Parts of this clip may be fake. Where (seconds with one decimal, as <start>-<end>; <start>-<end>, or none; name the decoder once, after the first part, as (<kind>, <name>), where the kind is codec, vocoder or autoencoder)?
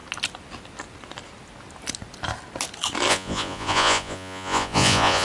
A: 3.1-5.2 (vocoder, Vocos)